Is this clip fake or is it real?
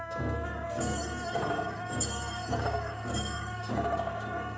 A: fake